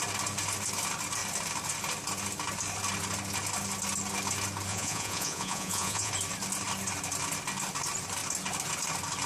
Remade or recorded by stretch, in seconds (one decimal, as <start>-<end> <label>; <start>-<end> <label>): 0.0-4.7 recorded; 4.7-6.1 remade; 6.1-9.3 recorded